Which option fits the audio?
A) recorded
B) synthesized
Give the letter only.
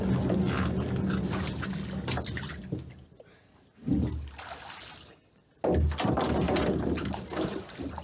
A